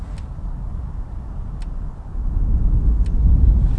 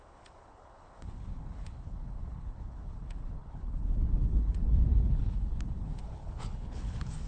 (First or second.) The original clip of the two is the first